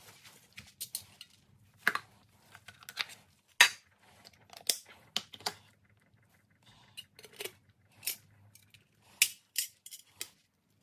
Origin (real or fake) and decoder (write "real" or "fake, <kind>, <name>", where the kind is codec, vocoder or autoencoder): real